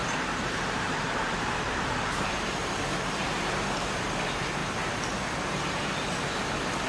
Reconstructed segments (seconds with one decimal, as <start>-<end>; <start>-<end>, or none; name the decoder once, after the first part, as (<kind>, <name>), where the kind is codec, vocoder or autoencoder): 0.0-3.9 (vocoder, BigVGAN v2); 4.6-5.2